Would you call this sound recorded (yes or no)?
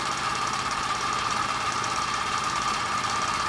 no